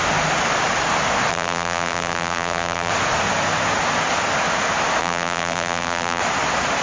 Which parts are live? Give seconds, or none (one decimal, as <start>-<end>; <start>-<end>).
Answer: 0.0-1.3; 2.9-5.0; 6.2-6.8